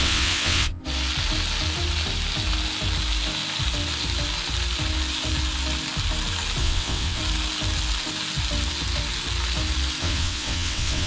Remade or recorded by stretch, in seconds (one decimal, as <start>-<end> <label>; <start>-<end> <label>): 0.0-0.8 remade; 0.8-6.6 recorded; 6.6-7.2 remade; 7.2-10.0 recorded; 10.0-11.1 remade